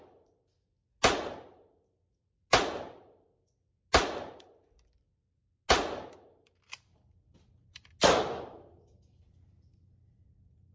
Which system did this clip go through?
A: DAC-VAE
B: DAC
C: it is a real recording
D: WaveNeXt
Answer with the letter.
C